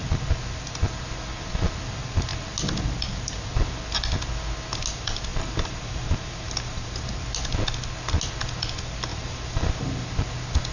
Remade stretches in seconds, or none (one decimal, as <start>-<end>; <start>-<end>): 5.3-7.0; 9.1-9.8